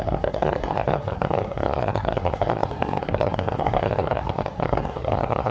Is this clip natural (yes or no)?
no